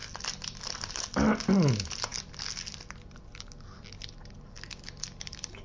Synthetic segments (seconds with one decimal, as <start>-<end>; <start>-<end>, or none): none

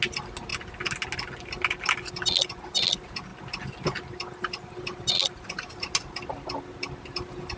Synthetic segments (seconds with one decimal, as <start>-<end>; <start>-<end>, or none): none

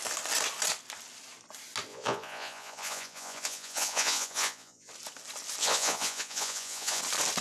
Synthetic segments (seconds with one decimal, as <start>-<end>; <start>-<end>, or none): 1.9-4.9; 5.6-7.0

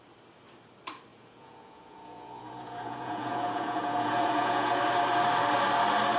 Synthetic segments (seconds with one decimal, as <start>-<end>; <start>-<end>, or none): 1.1-4.8

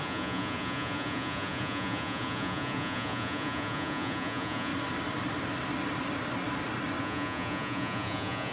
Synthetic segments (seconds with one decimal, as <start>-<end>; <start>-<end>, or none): 0.0-4.7; 7.0-8.5